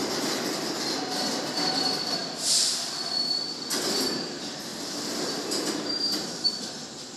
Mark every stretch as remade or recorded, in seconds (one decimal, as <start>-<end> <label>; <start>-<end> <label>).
0.0-0.9 recorded; 0.9-2.2 remade; 2.2-3.1 recorded; 3.1-4.7 remade; 4.7-6.7 recorded; 6.7-7.2 remade

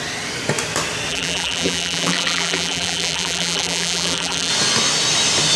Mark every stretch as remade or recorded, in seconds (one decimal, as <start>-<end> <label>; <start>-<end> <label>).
0.0-1.1 recorded; 1.1-4.5 remade; 4.5-5.6 recorded

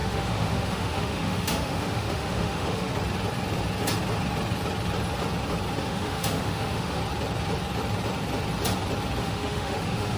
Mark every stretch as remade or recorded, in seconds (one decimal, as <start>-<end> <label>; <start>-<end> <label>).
0.0-2.9 remade; 2.9-5.8 recorded; 5.8-7.0 remade; 7.0-9.2 recorded; 9.2-10.2 remade

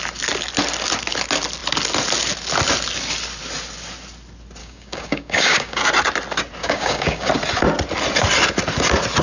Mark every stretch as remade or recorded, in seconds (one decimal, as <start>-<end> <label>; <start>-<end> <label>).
0.0-4.6 recorded; 4.6-5.8 remade; 5.8-6.6 recorded; 6.6-7.3 remade; 7.3-9.2 recorded

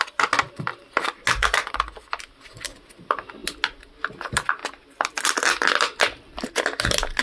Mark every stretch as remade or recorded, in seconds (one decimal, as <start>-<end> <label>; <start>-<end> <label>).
0.0-7.2 recorded

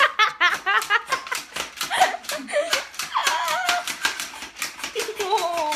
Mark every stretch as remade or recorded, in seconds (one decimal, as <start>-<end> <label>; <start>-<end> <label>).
0.0-5.8 recorded

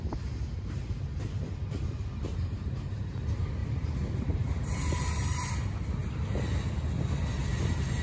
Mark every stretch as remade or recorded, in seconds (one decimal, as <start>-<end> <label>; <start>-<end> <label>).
0.0-2.3 recorded; 2.3-3.1 remade; 3.1-3.6 recorded; 3.6-5.5 remade; 5.5-8.0 recorded

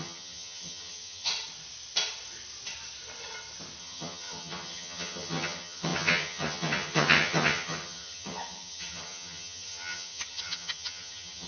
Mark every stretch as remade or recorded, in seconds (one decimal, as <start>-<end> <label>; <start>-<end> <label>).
0.0-1.3 remade; 1.3-3.8 recorded; 3.8-11.5 remade